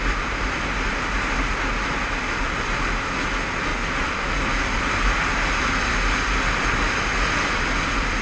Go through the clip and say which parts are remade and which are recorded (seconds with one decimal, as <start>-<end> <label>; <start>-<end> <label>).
0.0-8.2 recorded